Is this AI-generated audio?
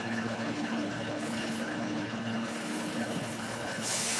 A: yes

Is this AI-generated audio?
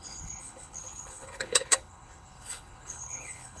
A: yes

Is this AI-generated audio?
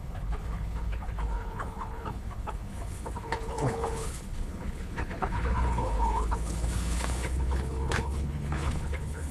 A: yes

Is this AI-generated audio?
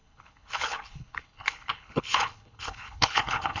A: yes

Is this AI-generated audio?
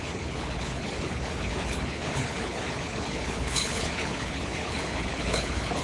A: yes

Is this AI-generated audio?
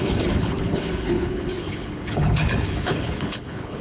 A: yes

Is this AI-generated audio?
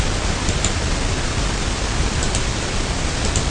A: no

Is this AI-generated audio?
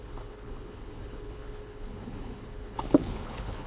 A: yes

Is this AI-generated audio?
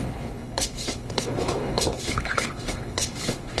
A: yes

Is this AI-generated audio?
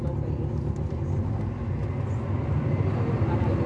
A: no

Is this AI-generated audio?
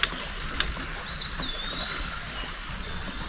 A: no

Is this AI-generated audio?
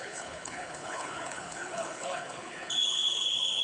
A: yes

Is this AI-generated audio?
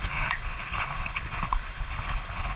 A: yes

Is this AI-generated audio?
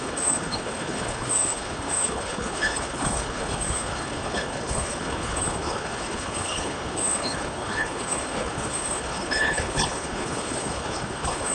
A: yes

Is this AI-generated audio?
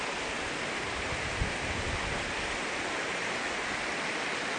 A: no